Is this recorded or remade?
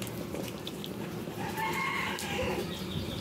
recorded